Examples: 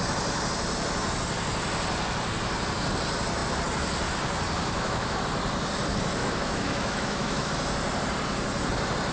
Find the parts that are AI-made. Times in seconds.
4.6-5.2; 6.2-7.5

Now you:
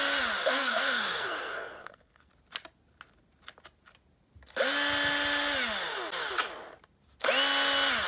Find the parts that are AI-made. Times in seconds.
0.4-2.3

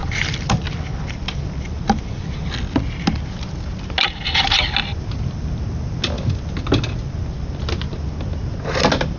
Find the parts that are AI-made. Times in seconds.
none

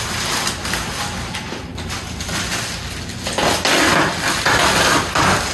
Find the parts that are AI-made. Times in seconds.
1.7-2.5

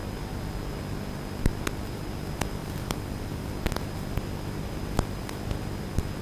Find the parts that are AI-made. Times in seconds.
2.6-3.5